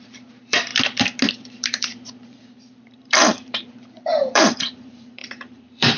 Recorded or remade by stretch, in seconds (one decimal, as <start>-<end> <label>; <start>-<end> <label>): 0.0-0.7 remade; 0.7-1.3 recorded; 1.3-6.0 remade